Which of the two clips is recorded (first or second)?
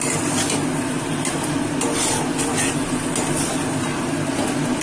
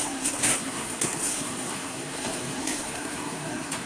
first